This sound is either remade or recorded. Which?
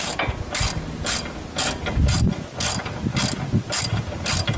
recorded